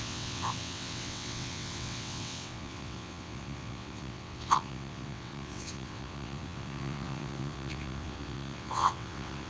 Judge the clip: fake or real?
fake